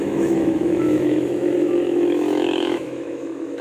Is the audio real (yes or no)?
no